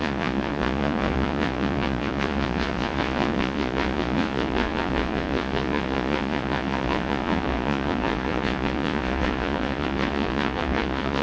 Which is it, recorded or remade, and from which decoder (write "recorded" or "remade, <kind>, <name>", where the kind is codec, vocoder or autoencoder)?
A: remade, vocoder, Vocos